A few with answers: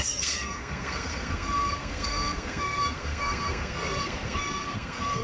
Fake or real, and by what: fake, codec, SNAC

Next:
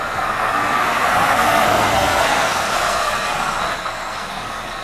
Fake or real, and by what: fake, codec, SNAC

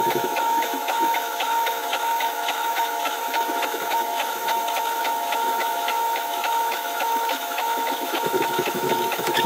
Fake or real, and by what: fake, autoencoder, DAC-VAE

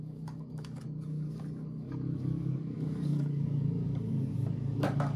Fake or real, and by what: fake, codec, DAC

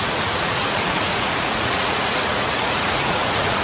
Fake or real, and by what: fake, vocoder, Vocos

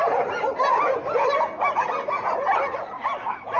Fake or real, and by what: real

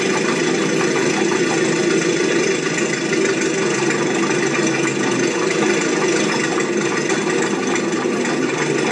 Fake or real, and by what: real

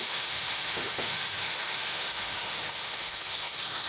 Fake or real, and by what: fake, autoencoder, DAC-VAE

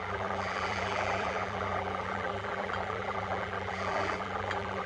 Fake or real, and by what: fake, vocoder, BigVGAN v2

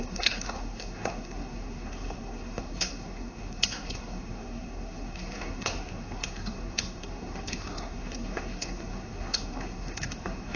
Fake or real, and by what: fake, codec, SNAC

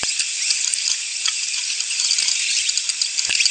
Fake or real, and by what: real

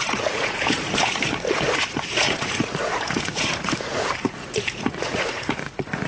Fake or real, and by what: fake, vocoder, Vocos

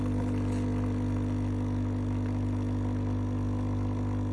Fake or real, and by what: real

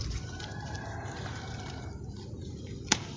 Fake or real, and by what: real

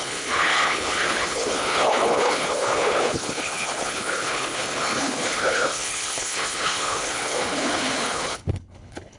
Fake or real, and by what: fake, codec, HILCodec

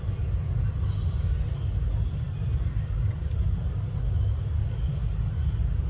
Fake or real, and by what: real